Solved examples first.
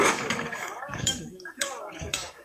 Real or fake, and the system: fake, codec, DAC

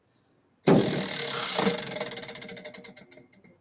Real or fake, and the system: real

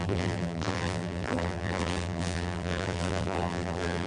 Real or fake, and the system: fake, vocoder, BigVGAN v2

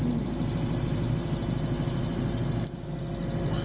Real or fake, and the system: real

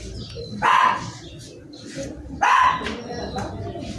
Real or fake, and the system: real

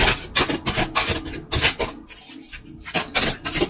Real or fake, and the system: real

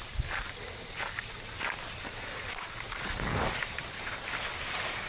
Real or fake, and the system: real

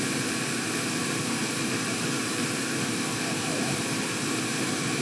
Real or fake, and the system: fake, vocoder, BigVGAN v2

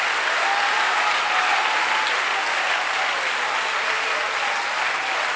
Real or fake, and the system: real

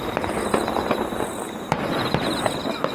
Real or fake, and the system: real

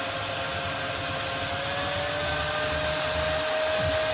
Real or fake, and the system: real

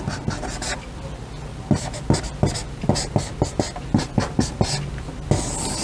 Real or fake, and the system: real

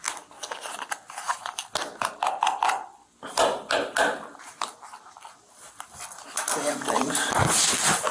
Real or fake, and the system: real